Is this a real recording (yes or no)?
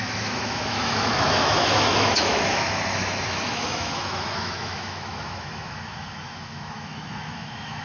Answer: no